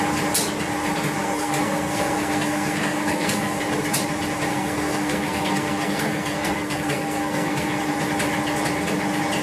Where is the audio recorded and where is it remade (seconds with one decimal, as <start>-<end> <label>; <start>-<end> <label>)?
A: 0.0-1.2 recorded; 1.2-3.6 remade; 3.6-4.5 recorded; 4.5-7.8 remade; 7.8-9.4 recorded